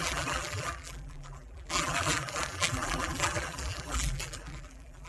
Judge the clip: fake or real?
fake